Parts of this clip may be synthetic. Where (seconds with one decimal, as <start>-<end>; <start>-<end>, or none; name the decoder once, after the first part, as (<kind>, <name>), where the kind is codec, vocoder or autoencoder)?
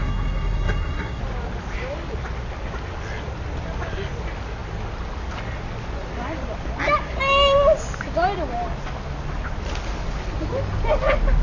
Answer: 0.0-1.2 (codec, SNAC)